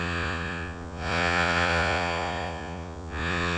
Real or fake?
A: fake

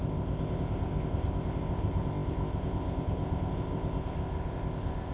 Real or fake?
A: fake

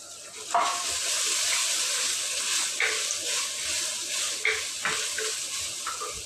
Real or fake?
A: real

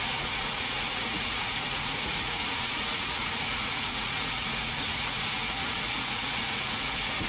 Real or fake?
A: fake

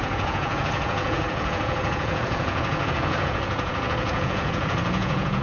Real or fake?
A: fake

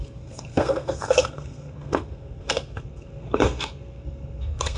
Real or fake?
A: fake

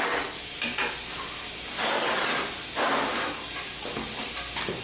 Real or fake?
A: real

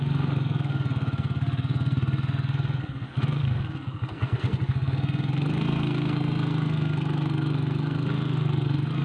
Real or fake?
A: fake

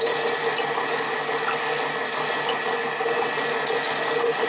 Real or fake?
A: real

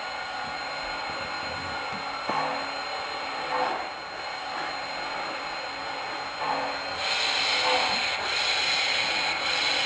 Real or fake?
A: real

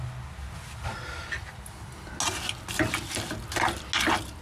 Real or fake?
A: real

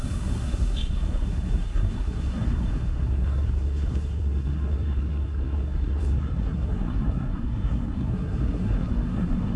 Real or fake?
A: fake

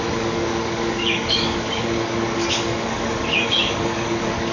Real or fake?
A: fake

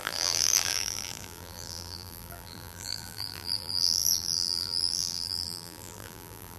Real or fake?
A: fake